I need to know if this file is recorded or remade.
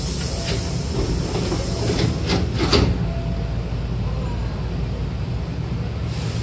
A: recorded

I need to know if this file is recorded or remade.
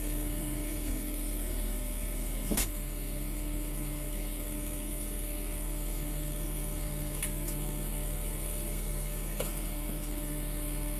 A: remade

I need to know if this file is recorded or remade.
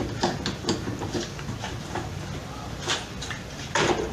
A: recorded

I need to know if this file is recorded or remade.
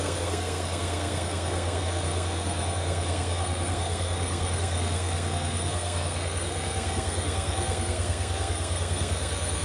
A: remade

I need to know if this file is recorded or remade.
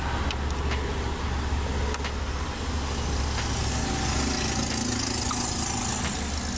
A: recorded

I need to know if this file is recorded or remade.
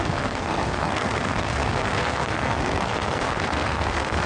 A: remade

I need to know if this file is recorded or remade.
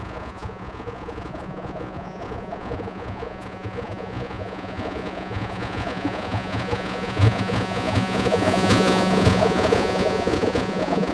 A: remade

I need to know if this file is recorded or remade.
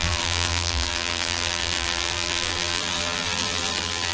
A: remade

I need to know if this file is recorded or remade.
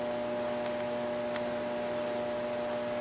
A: recorded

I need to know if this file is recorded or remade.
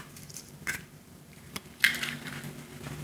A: remade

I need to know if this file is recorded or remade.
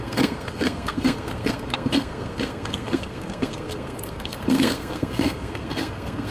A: remade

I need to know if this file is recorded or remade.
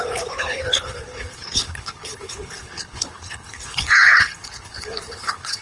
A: remade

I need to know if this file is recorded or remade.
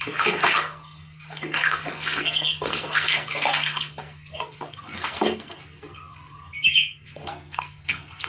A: remade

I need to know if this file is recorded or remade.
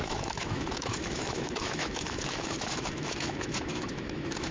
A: remade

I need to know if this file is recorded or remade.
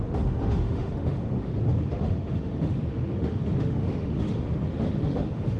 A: remade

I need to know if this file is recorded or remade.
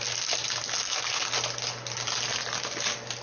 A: recorded